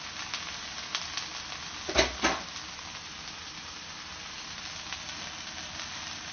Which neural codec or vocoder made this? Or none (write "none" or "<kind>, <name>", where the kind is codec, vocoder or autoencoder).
none